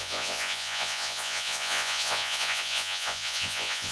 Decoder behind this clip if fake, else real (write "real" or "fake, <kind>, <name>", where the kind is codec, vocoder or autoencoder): fake, vocoder, Vocos